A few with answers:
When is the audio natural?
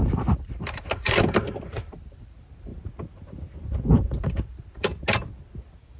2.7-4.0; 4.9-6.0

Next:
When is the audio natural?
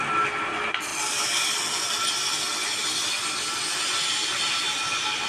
0.0-5.3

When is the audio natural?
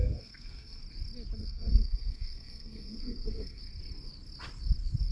0.8-1.4; 3.6-5.1